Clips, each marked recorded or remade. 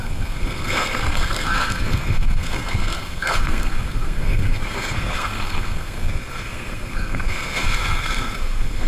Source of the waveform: remade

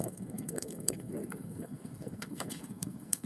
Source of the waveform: remade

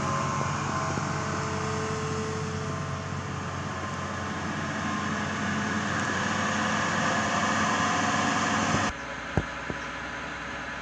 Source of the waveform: recorded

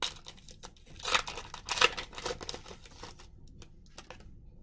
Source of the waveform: recorded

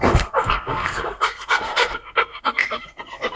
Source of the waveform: remade